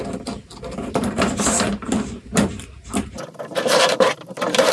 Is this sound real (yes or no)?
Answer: no